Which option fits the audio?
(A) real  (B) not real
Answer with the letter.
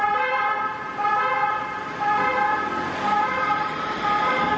A